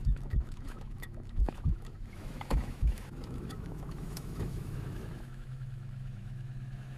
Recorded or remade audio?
remade